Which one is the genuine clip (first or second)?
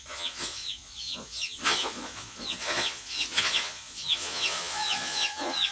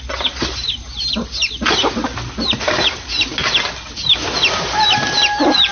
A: second